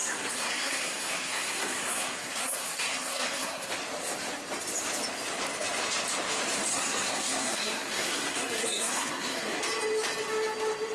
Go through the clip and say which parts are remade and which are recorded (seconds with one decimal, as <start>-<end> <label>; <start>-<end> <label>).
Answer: 0.0-3.7 remade; 3.7-6.7 recorded; 6.7-9.6 remade; 9.6-10.9 recorded